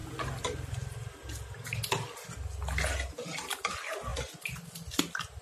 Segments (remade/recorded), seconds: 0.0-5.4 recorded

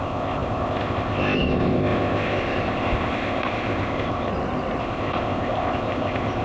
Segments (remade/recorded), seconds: 0.0-4.3 remade; 4.3-4.8 recorded; 4.8-6.4 remade

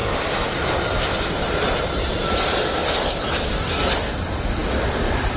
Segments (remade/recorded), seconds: 0.0-5.4 recorded

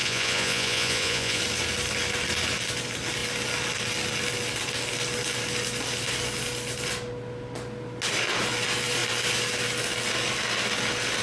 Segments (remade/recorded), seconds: 0.0-1.4 remade; 1.4-11.2 recorded

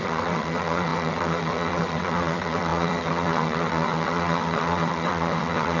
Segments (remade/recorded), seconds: 0.0-5.8 remade

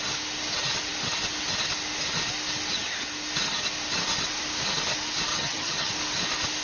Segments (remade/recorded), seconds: 0.0-5.3 recorded; 5.3-5.9 remade; 5.9-6.6 recorded

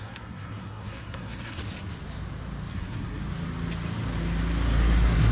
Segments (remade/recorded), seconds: 0.0-1.6 remade; 1.6-2.7 recorded; 2.7-3.2 remade; 3.2-4.8 recorded; 4.8-5.3 remade